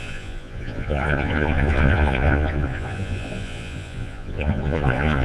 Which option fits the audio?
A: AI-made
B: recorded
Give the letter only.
A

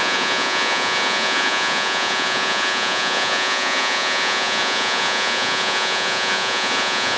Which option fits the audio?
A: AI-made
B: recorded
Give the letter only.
A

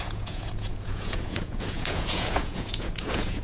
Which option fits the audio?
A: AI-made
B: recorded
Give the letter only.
A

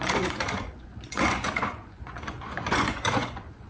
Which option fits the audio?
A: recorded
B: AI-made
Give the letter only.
B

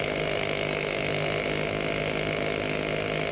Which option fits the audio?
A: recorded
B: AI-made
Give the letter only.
A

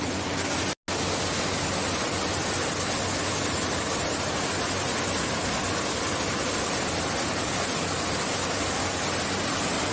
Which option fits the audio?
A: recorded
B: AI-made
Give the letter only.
A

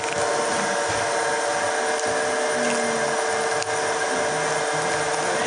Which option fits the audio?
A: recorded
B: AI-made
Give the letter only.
A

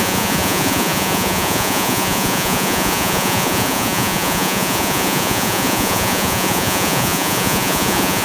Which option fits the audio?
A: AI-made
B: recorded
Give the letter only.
A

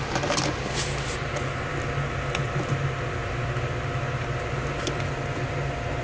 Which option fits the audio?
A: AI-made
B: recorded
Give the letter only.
B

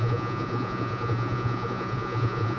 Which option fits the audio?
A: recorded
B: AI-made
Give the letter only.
B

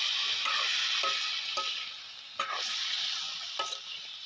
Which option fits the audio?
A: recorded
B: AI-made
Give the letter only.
A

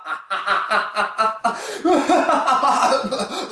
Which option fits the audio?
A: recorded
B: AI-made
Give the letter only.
A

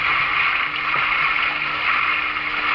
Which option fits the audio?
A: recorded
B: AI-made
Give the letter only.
A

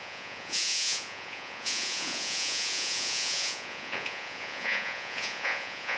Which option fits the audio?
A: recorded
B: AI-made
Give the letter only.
B